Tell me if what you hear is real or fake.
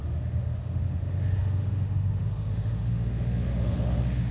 fake